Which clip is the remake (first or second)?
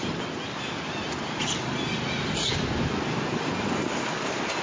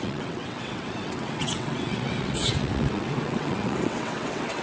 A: second